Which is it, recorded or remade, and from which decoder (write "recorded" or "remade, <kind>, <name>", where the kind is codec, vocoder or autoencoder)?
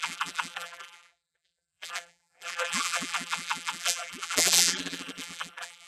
remade, vocoder, BigVGAN v2